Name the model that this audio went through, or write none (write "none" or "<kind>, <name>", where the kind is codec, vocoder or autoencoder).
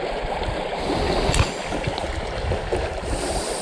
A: none